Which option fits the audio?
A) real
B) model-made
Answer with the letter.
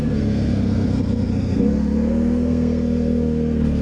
B